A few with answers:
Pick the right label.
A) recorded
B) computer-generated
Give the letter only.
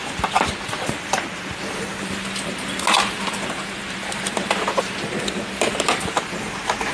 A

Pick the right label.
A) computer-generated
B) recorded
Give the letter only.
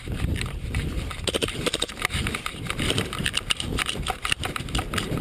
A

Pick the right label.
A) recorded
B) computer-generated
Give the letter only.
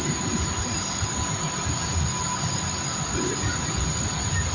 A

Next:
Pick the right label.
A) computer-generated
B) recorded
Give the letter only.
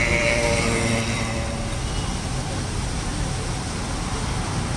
B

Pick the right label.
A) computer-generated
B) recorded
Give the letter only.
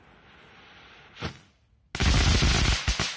B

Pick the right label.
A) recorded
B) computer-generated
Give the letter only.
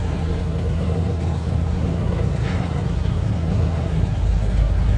B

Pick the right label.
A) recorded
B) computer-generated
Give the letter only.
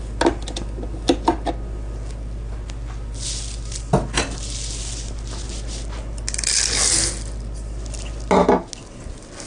A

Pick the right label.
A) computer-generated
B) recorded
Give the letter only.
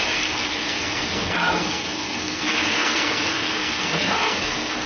A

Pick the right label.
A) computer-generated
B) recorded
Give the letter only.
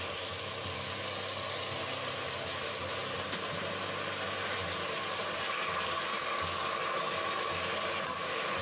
B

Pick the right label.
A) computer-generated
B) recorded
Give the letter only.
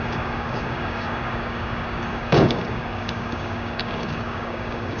A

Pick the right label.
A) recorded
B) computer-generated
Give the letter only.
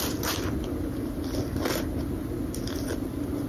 A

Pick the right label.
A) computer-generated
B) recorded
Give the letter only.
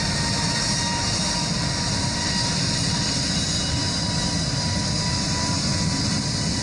B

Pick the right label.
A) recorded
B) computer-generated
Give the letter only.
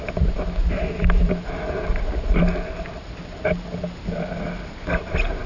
A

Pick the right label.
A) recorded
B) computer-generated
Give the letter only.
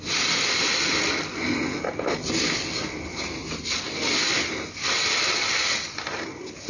A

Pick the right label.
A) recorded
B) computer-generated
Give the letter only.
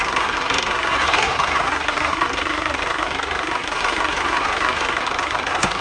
B